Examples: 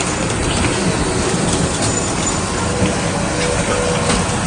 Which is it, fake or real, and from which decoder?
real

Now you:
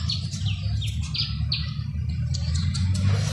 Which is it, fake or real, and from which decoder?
real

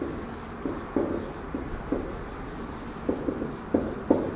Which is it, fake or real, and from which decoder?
real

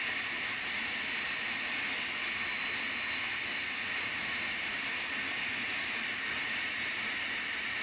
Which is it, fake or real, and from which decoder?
real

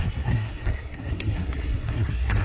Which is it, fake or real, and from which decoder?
fake, codec, SNAC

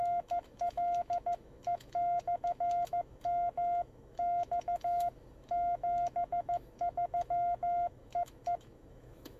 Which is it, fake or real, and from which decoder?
fake, autoencoder, DAC-VAE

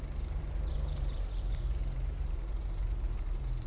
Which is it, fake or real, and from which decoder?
fake, vocoder, BigVGAN v2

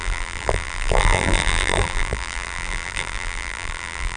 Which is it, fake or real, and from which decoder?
fake, vocoder, BigVGAN v2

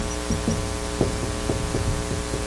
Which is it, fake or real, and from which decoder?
real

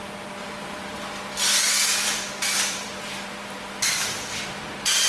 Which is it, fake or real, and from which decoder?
fake, vocoder, BigVGAN v2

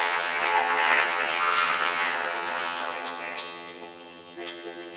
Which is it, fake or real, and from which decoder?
fake, vocoder, HiFi-GAN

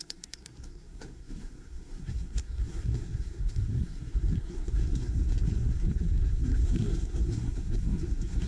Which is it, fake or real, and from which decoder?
fake, codec, SNAC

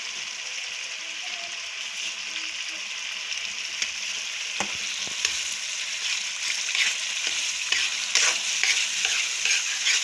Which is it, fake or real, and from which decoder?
real